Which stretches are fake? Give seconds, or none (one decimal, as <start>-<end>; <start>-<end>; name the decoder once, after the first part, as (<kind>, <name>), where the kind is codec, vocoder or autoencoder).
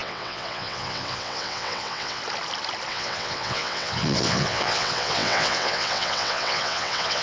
0.0-2.2 (vocoder, WaveNeXt); 2.9-7.2